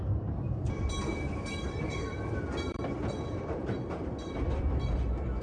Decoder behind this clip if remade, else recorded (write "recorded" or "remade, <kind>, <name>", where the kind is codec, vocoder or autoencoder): remade, vocoder, BigVGAN v2